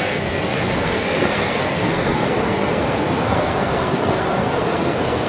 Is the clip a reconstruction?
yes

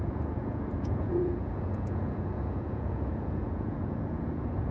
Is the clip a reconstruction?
yes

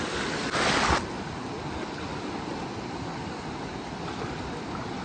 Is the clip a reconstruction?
no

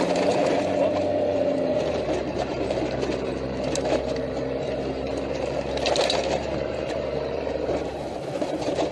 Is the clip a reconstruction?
yes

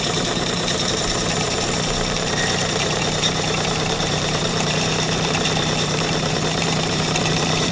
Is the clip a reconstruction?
yes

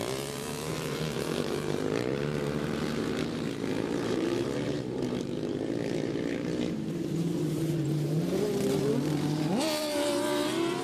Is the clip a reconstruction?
yes